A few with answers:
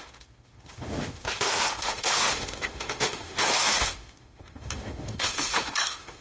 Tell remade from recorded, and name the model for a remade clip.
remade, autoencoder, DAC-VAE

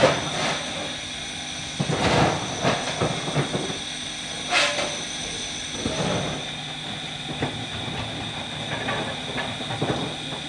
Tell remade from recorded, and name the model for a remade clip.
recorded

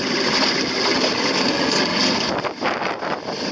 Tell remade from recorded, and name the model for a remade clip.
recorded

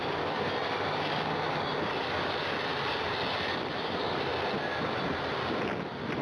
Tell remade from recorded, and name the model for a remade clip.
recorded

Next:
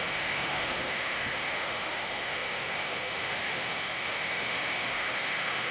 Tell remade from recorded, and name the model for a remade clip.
remade, autoencoder, DAC-VAE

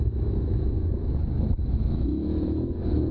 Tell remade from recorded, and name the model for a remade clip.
remade, autoencoder, DAC-VAE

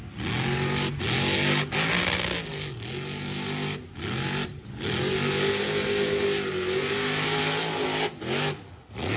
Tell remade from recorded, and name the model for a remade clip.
recorded